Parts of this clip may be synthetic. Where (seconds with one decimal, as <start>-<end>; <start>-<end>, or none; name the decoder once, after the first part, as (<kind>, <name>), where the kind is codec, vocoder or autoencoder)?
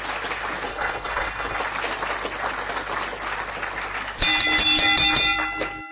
0.7-1.6 (codec, HILCodec)